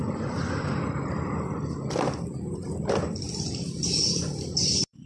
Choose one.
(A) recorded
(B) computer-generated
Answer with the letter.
B